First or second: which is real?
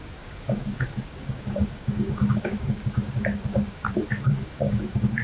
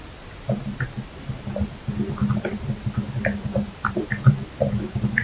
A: second